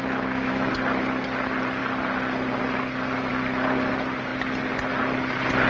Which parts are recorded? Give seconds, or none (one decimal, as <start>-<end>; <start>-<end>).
0.7-5.7